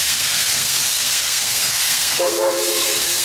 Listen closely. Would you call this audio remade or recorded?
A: remade